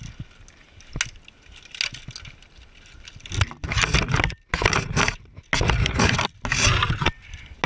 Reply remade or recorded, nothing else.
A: recorded